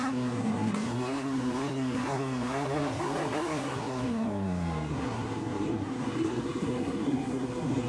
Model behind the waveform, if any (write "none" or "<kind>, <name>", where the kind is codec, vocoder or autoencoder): codec, SNAC